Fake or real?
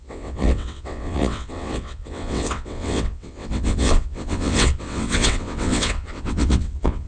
fake